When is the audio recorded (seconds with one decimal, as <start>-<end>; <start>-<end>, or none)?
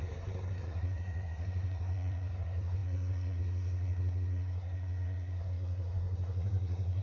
none